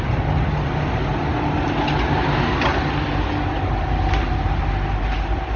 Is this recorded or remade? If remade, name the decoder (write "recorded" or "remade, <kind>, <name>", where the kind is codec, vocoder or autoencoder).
recorded